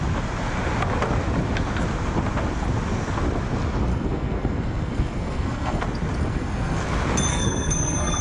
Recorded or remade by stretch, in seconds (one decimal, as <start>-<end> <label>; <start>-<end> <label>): 0.0-3.9 recorded; 3.9-5.8 remade; 5.8-6.2 recorded; 6.2-6.8 remade; 6.8-7.3 recorded; 7.3-8.2 remade